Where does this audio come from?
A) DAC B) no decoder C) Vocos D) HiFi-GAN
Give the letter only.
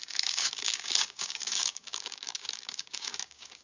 A